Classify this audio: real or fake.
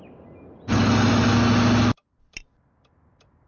real